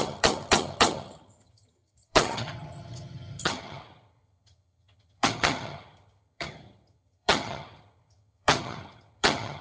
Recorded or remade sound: remade